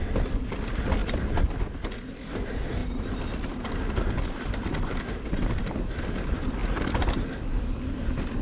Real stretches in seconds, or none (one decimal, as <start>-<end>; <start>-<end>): 0.0-8.4